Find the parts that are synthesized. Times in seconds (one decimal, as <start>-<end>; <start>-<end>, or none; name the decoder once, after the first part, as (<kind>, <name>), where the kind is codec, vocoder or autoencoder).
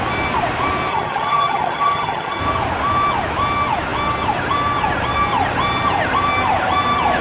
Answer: 0.9-2.4 (vocoder, HiFi-GAN)